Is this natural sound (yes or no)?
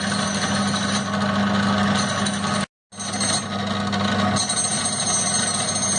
yes